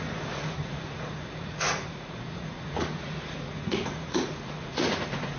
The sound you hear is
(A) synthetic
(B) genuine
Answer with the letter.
A